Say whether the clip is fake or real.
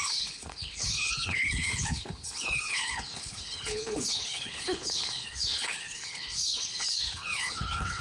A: fake